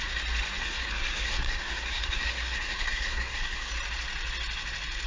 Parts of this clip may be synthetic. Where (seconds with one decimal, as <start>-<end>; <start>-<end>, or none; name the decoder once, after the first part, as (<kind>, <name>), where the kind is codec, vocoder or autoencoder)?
0.6-3.7 (codec, SNAC)